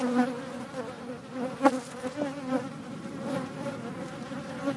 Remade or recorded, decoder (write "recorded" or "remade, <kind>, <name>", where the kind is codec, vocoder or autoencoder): recorded